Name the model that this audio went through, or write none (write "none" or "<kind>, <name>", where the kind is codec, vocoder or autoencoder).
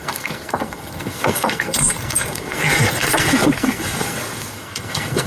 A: codec, SNAC